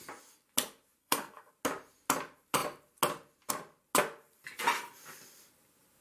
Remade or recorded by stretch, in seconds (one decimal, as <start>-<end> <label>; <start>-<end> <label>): 0.0-1.0 recorded; 1.0-1.5 remade; 1.5-6.0 recorded